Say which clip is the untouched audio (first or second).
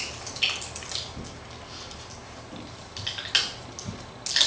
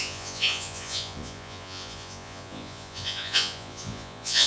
first